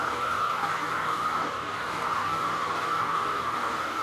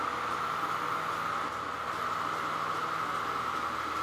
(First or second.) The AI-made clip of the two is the first